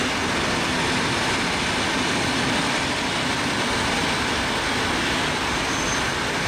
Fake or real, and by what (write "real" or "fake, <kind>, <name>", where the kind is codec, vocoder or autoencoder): real